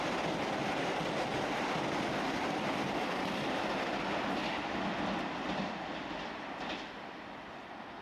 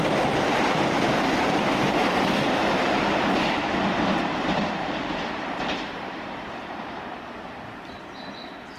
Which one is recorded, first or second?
first